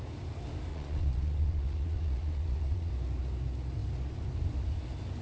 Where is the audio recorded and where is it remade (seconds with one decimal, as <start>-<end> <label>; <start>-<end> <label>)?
0.0-0.7 recorded; 0.7-2.9 remade; 2.9-5.2 recorded